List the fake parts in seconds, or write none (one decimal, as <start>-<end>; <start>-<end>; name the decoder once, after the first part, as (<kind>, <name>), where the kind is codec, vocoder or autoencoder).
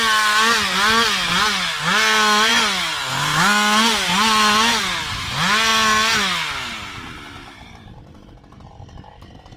none